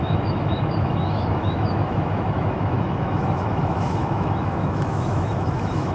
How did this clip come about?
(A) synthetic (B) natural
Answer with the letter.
A